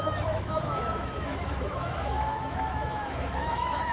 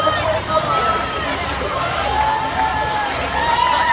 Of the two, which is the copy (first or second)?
first